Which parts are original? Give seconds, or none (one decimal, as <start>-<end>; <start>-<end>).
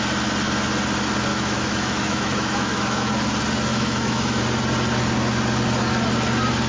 0.0-1.3; 3.1-3.7; 4.4-6.7